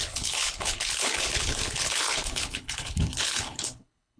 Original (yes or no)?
no